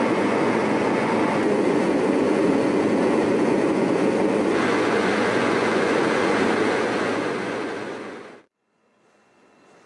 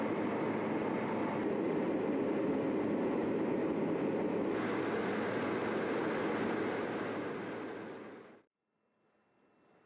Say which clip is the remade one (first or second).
first